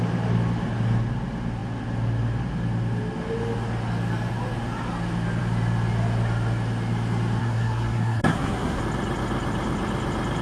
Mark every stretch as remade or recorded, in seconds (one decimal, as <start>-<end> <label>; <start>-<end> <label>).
0.0-7.4 recorded; 7.4-8.8 remade; 8.8-10.4 recorded